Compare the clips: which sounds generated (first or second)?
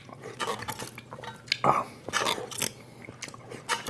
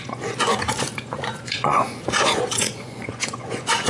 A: second